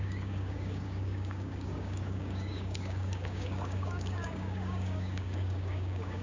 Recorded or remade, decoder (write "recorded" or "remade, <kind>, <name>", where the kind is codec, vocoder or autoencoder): remade, codec, DAC